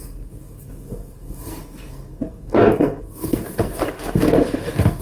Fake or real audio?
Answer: fake